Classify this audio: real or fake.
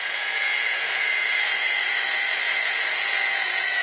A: fake